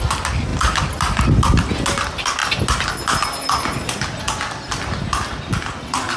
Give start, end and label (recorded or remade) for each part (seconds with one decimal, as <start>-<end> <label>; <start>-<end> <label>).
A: 0.0-6.2 recorded